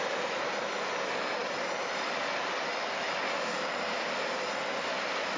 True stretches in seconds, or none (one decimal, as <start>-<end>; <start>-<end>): 0.0-5.4